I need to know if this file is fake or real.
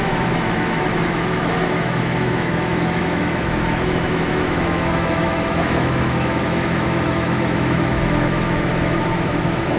fake